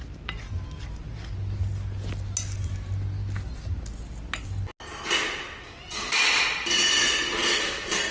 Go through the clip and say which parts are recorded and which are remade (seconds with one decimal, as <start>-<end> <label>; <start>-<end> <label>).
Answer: 0.0-8.1 recorded